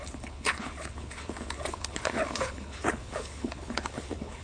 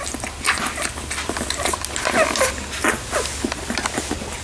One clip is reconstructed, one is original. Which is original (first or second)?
second